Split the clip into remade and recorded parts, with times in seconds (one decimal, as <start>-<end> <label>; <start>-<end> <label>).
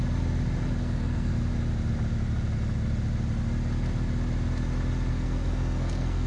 0.0-0.8 recorded; 0.8-1.3 remade; 1.3-5.1 recorded; 5.1-6.3 remade